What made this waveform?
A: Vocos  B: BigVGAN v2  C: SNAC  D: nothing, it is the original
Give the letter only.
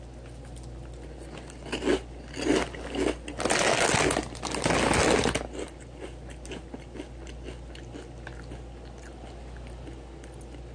D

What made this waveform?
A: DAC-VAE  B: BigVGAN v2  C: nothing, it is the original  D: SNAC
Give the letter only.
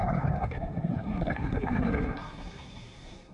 D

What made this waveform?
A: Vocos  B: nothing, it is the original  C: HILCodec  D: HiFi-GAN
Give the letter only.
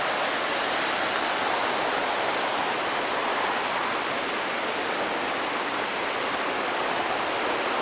B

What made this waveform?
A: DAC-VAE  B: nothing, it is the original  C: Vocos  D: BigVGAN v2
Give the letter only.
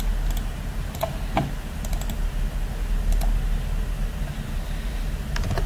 B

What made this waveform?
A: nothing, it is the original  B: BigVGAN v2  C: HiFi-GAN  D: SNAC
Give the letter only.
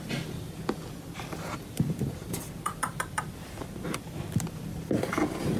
B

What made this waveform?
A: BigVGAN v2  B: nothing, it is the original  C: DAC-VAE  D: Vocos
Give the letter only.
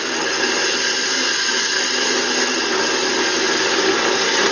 B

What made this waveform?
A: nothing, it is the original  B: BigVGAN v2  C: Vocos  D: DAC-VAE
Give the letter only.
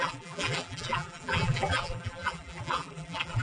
B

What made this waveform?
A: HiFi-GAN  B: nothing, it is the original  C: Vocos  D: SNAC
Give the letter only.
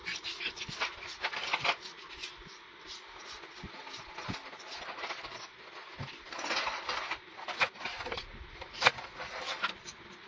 B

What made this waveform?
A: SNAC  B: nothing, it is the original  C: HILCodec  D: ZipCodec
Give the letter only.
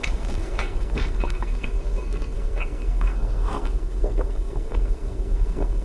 A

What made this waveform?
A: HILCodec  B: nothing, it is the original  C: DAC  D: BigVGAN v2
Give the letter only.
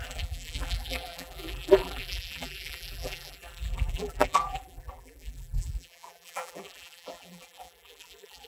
D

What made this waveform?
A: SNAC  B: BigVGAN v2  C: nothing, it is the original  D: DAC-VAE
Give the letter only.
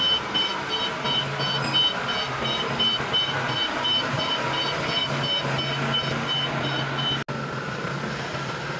C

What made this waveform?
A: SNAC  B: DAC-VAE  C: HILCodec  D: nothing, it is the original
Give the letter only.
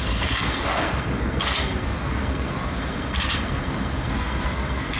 A